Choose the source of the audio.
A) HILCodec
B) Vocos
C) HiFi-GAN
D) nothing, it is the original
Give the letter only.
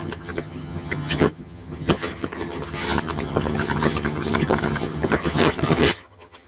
C